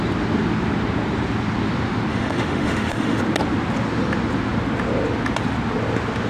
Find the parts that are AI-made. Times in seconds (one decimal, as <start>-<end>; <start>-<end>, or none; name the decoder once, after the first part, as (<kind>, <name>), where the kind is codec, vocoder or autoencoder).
2.1-3.2 (autoencoder, DAC-VAE)